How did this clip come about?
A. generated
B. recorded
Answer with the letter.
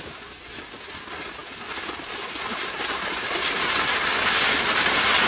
B